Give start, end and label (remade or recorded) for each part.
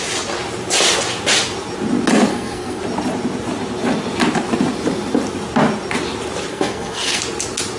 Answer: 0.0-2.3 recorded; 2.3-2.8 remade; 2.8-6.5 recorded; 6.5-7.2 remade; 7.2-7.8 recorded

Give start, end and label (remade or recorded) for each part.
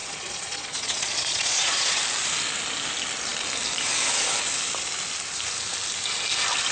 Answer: 0.0-2.0 remade; 2.0-6.7 recorded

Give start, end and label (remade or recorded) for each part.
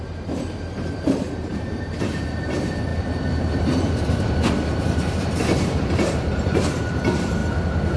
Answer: 0.0-7.4 remade; 7.4-8.0 recorded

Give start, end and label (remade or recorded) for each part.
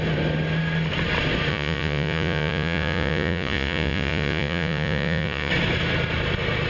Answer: 0.0-1.5 recorded; 1.5-5.5 remade; 5.5-6.7 recorded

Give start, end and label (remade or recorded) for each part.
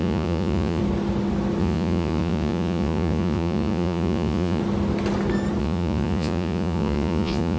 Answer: 0.0-0.8 remade; 0.8-1.6 recorded; 1.6-4.6 remade; 4.6-5.6 recorded; 5.6-7.6 remade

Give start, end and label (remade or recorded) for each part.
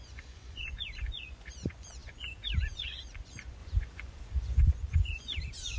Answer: 0.0-5.8 remade